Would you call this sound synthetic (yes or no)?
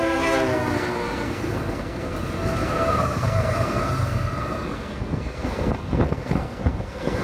yes